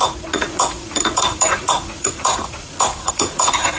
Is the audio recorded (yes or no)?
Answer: no